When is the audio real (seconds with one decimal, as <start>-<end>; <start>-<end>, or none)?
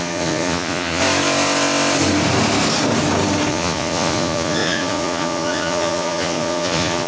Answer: 1.0-3.5